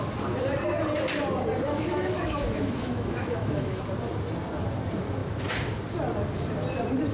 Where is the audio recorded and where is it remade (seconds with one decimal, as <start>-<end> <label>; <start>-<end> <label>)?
0.0-1.7 recorded; 1.7-3.8 remade; 3.8-7.1 recorded